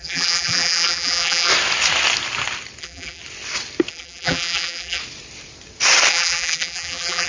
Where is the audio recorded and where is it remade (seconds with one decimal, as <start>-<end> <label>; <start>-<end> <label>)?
0.0-1.5 remade; 1.5-2.8 recorded; 2.8-3.2 remade; 3.2-3.9 recorded; 3.9-5.0 remade; 5.0-6.1 recorded; 6.1-7.3 remade